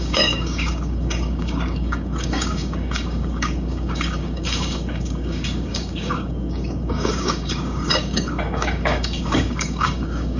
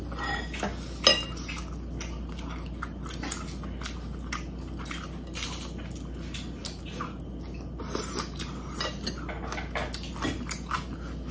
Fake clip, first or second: first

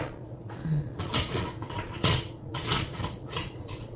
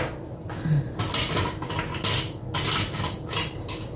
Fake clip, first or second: first